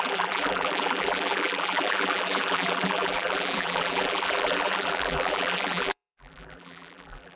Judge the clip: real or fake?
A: fake